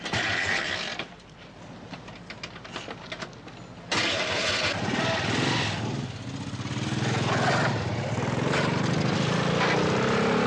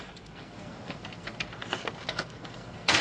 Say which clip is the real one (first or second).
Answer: first